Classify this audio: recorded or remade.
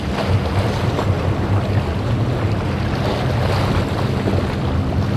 recorded